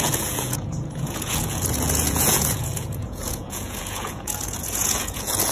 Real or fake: fake